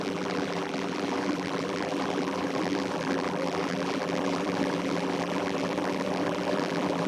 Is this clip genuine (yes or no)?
no